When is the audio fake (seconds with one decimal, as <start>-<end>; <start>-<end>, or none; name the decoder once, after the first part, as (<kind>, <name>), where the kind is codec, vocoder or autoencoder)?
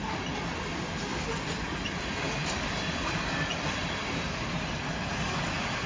1.1-1.6 (vocoder, BigVGAN v2); 2.4-4.9